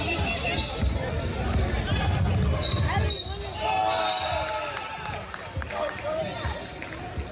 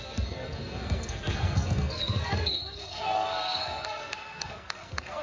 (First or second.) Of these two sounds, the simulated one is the second